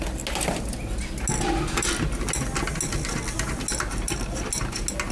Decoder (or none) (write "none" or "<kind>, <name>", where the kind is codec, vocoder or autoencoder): none